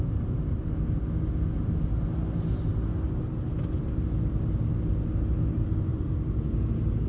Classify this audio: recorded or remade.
recorded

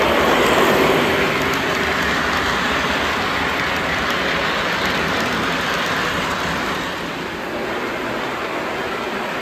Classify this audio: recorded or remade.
recorded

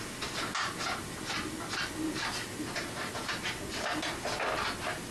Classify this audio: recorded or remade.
recorded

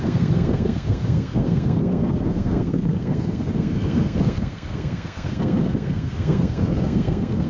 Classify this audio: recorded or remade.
remade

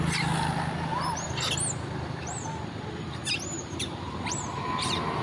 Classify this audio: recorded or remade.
recorded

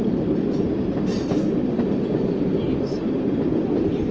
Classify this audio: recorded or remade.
recorded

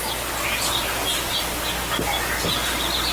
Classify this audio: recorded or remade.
recorded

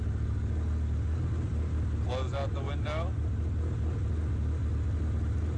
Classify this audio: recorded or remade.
recorded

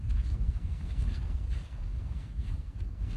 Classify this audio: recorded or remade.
remade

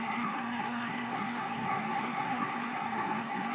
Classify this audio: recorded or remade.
remade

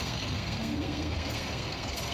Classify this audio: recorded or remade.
remade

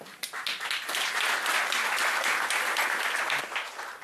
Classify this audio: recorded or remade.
recorded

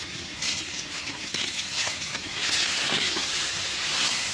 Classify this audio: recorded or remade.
remade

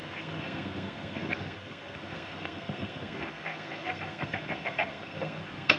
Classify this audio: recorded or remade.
remade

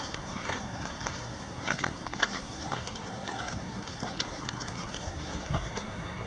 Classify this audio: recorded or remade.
remade